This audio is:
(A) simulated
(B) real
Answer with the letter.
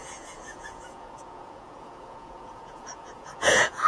A